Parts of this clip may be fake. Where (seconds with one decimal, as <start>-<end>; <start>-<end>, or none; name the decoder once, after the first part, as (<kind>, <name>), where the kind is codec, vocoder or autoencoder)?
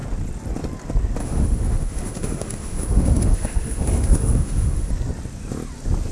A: 1.2-4.9 (autoencoder, DAC-VAE)